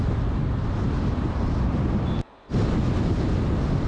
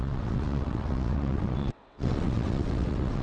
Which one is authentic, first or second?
first